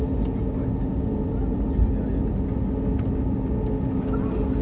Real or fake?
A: real